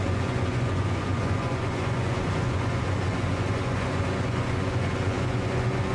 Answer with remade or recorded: remade